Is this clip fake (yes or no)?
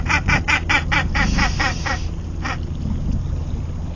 no